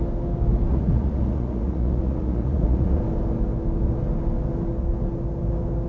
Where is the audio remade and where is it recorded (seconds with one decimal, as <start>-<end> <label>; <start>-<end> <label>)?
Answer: 0.0-0.7 recorded; 0.7-3.0 remade; 3.0-5.9 recorded